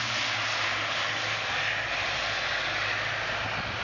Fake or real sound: real